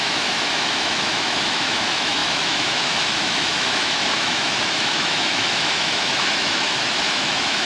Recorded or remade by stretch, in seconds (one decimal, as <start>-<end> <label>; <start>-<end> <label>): 0.0-7.7 remade